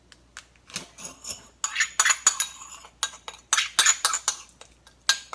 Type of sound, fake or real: real